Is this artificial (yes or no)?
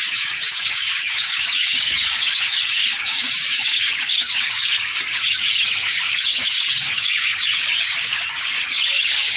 yes